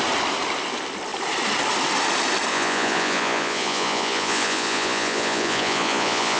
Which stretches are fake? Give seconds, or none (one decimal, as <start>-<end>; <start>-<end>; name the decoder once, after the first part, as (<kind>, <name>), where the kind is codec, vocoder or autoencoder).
2.5-6.4 (vocoder, Vocos)